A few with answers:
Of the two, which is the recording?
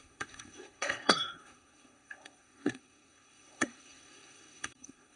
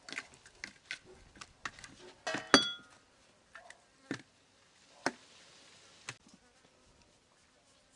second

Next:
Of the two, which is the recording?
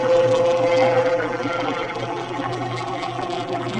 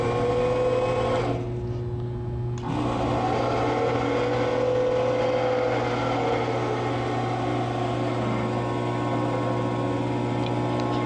second